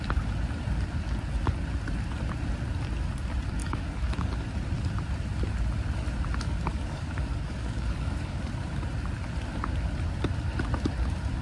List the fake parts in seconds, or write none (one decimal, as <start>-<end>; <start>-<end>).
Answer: 3.6-4.5; 6.7-8.4